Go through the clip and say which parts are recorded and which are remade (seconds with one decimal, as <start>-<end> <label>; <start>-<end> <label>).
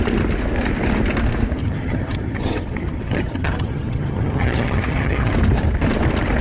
0.0-1.6 recorded; 1.6-5.3 remade; 5.3-6.4 recorded